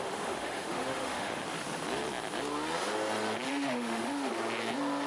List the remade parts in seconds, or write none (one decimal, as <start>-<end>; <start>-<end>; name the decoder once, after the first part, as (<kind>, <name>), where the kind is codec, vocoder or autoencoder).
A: 0.0-1.4 (autoencoder, DAC-VAE); 3.5-4.3